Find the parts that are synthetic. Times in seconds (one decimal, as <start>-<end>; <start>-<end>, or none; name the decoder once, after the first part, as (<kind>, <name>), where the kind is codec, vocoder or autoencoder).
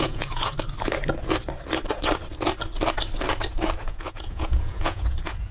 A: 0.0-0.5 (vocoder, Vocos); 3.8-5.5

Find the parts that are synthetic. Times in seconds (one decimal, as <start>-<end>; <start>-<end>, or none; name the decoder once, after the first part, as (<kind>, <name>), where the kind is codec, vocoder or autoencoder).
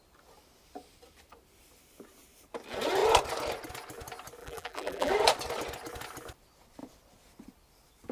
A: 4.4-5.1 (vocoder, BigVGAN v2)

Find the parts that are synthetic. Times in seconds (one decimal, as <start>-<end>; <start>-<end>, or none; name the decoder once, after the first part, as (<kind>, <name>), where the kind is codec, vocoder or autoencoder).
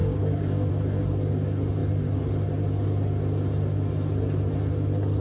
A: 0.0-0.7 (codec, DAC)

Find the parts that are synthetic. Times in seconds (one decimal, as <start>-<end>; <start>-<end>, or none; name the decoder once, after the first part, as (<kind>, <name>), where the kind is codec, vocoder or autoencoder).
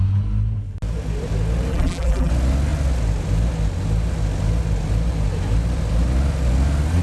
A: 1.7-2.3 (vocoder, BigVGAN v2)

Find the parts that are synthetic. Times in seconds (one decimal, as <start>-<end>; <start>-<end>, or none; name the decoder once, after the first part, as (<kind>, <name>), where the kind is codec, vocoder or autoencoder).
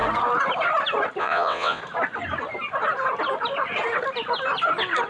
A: 1.2-1.8 (vocoder, WaveNeXt)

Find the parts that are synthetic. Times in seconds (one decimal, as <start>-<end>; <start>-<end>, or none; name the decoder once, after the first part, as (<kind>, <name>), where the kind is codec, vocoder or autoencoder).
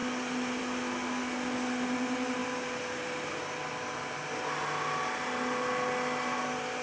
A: 0.0-0.6 (vocoder, BigVGAN v2); 2.4-3.7